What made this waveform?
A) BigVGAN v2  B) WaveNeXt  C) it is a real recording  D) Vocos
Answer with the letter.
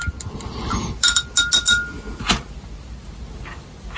C